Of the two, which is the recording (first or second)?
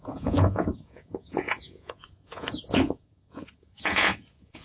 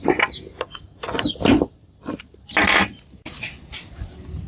second